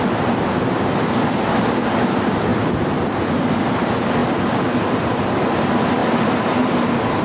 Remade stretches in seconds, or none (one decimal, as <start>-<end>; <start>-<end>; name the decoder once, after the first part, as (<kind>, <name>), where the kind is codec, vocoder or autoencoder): 0.0-4.2 (vocoder, BigVGAN v2); 4.8-6.0; 6.6-7.2